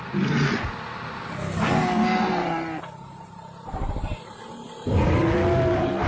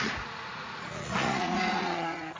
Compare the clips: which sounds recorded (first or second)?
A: first